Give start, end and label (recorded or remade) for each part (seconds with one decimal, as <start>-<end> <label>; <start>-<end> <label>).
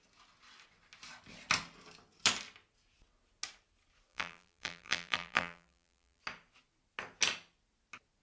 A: 0.0-4.1 recorded; 4.1-6.2 remade; 6.2-8.2 recorded